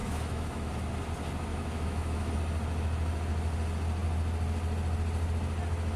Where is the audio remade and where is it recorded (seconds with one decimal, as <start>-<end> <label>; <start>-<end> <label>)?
0.0-0.7 remade; 0.7-1.5 recorded; 1.5-2.3 remade; 2.3-6.0 recorded

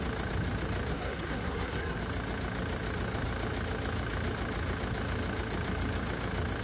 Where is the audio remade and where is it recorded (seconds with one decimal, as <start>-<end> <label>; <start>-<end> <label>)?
0.0-0.9 recorded; 0.9-2.0 remade; 2.0-6.6 recorded

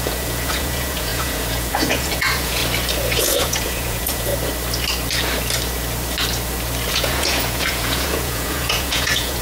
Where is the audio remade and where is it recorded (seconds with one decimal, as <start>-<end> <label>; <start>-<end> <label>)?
0.0-2.6 remade; 2.6-3.2 recorded; 3.2-4.3 remade; 4.3-6.9 recorded; 6.9-9.4 remade

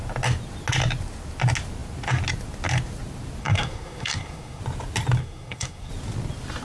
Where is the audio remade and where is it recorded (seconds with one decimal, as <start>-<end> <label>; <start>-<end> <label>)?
0.0-3.4 recorded; 3.4-4.6 remade; 4.6-5.2 recorded; 5.2-5.9 remade; 5.9-6.6 recorded

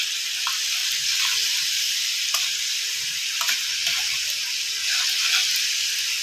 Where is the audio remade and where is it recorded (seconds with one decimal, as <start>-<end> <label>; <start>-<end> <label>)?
0.0-0.8 recorded; 0.8-4.5 remade; 4.5-5.2 recorded; 5.2-5.7 remade; 5.7-6.2 recorded

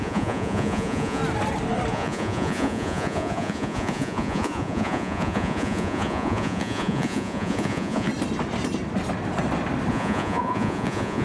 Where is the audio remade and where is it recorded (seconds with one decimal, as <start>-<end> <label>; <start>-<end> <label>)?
0.0-1.2 remade; 1.2-1.9 recorded; 1.9-8.1 remade; 8.1-9.9 recorded; 9.9-11.2 remade

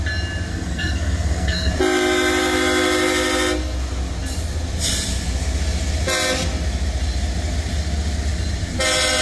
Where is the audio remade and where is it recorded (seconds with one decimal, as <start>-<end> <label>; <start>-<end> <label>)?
0.0-0.5 recorded; 0.5-1.7 remade; 1.7-9.2 recorded